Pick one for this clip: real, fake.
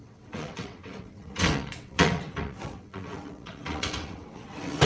fake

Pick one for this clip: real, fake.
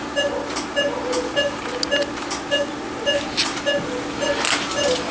real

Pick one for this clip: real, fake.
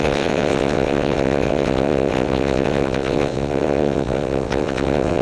fake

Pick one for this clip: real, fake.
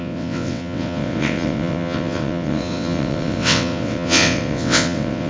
fake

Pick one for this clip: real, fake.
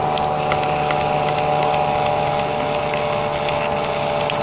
real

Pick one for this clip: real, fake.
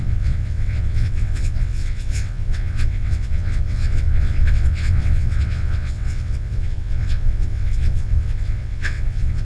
fake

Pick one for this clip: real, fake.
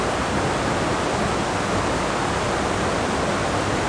real